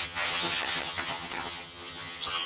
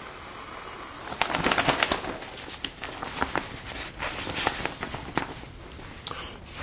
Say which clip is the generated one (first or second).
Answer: first